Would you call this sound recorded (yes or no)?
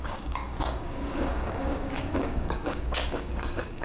no